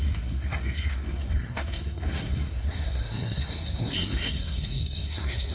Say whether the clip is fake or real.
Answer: fake